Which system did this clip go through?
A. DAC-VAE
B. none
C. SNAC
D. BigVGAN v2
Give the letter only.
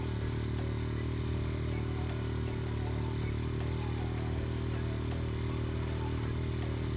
B